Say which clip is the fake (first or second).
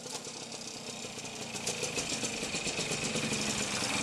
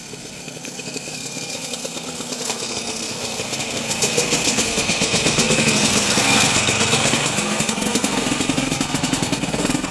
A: second